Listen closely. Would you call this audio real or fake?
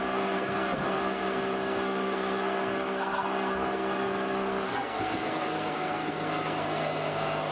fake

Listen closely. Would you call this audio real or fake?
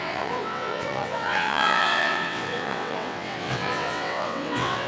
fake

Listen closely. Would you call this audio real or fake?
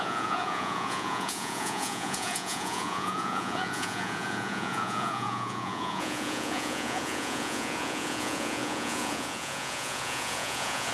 fake